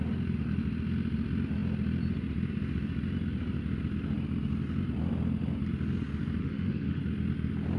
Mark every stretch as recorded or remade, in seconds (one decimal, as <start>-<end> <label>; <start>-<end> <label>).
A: 0.0-6.4 recorded; 6.4-7.0 remade; 7.0-7.8 recorded